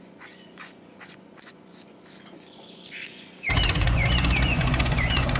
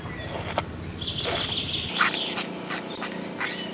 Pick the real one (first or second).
second